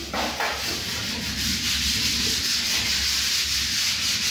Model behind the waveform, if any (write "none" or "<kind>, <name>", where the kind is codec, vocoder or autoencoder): none